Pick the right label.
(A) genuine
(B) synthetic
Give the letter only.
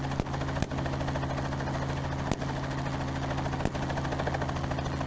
A